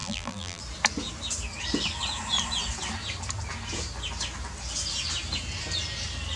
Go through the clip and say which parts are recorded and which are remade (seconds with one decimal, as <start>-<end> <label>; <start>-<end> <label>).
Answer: 0.0-0.6 remade; 0.6-6.4 recorded

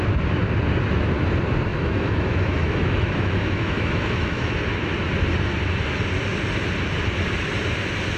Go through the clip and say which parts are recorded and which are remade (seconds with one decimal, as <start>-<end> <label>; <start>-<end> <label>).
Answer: 0.0-1.7 recorded; 1.7-4.5 remade; 4.5-8.2 recorded

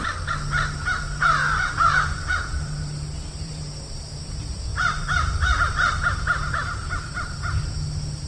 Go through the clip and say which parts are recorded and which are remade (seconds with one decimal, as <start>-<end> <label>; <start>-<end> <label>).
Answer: 0.0-3.9 remade; 3.9-4.7 recorded; 4.7-7.6 remade; 7.6-8.3 recorded

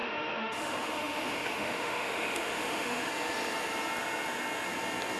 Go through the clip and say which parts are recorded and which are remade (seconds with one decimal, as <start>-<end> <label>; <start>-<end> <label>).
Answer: 0.0-3.1 remade; 3.1-5.2 recorded

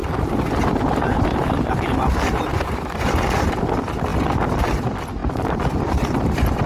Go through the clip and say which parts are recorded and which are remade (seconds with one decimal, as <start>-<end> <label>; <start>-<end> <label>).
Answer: 0.0-0.7 remade; 0.7-2.5 recorded; 2.5-3.0 remade; 3.0-5.2 recorded; 5.2-6.7 remade

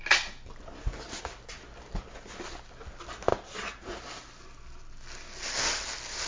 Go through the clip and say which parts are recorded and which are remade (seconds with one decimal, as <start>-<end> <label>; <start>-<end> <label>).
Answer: 0.0-6.3 recorded